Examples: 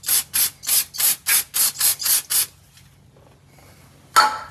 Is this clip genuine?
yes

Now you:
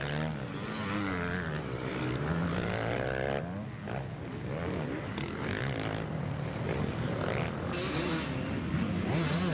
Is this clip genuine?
yes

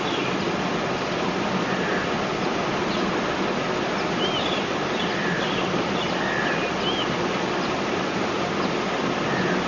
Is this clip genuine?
yes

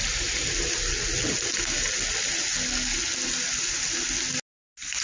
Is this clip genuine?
yes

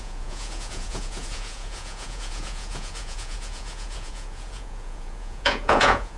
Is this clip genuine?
no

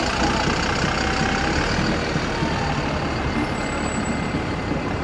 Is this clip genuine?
yes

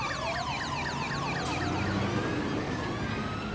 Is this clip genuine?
yes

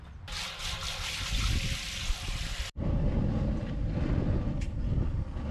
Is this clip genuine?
yes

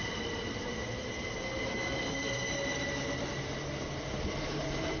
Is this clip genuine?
yes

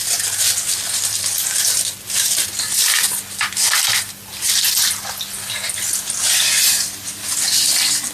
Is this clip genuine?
yes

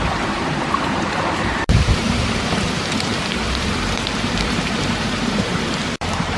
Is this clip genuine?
no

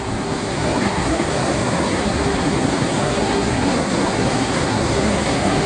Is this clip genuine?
no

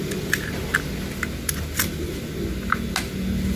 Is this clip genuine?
yes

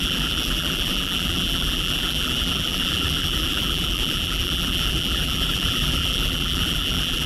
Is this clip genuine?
no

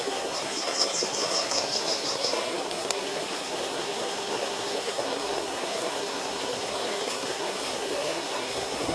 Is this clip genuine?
no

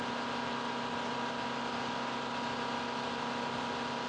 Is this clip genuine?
yes